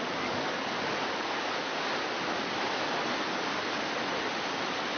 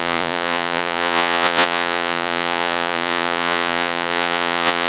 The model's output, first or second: second